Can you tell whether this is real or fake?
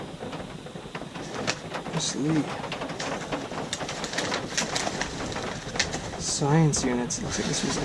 real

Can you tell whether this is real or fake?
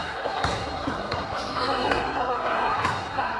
fake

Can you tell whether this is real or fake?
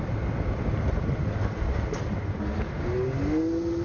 real